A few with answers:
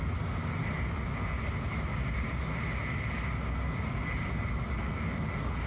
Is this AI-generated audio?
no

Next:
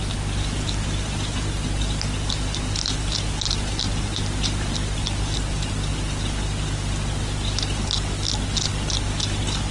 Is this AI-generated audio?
no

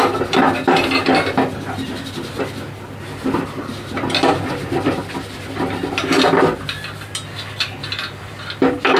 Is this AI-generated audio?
no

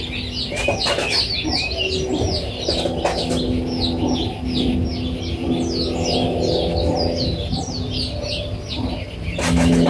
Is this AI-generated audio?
no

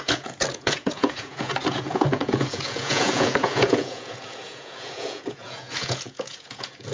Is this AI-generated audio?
yes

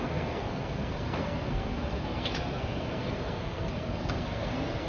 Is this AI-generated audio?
yes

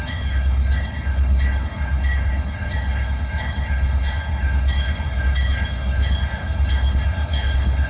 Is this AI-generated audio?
yes